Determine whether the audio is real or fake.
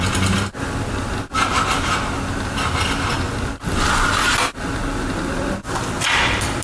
real